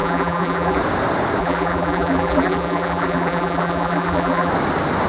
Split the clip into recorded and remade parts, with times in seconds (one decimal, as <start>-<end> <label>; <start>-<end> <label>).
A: 0.0-0.8 remade; 0.8-1.4 recorded; 1.4-4.5 remade; 4.5-5.1 recorded